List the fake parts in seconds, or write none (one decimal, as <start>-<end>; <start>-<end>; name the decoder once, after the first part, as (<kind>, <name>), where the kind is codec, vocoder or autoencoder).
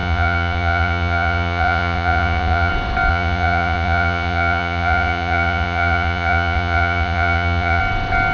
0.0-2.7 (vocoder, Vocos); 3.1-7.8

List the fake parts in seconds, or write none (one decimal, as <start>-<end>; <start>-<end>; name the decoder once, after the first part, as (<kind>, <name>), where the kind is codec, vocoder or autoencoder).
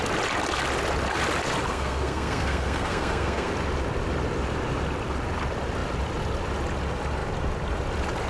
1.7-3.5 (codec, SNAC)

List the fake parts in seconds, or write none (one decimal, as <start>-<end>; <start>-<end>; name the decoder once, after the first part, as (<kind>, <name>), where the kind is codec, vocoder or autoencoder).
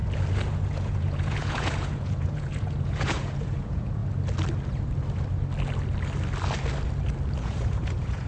0.5-4.0 (vocoder, Vocos); 7.4-8.3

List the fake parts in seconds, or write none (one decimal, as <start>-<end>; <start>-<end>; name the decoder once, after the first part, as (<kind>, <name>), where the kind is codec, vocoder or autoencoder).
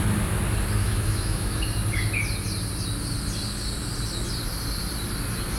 0.8-1.6 (autoencoder, DAC-VAE)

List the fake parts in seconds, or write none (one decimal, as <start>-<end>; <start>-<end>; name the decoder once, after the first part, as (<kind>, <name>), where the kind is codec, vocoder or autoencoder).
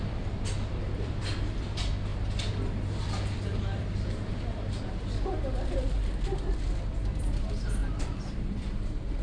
0.0-9.2 (vocoder, BigVGAN v2)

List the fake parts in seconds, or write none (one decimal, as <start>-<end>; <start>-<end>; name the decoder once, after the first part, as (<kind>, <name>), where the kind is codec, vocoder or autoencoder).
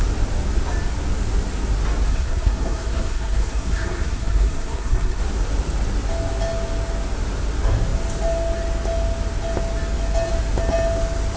2.1-5.2 (codec, SNAC)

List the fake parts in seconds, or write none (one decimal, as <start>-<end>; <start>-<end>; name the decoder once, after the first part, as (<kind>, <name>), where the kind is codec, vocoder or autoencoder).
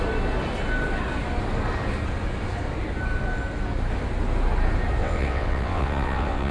5.0-6.5 (vocoder, WaveNeXt)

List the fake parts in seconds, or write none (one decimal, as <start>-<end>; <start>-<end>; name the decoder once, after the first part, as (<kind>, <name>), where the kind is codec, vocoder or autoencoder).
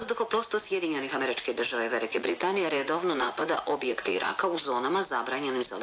2.1-4.3 (vocoder, Vocos)